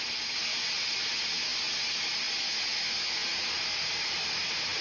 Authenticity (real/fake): real